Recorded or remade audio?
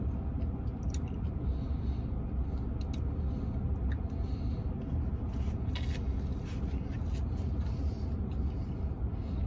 recorded